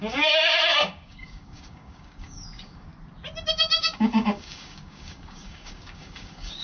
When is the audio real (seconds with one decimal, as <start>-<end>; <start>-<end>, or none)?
2.9-3.8